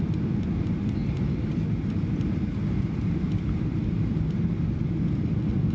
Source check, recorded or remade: remade